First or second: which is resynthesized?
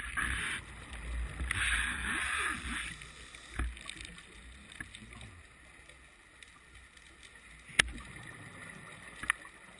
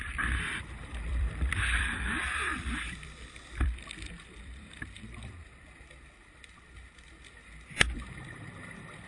second